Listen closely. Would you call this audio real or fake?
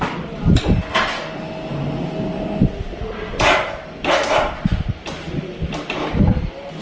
real